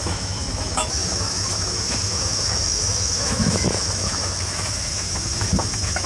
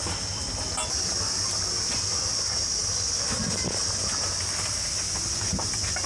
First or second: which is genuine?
second